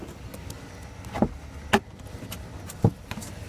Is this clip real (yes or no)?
yes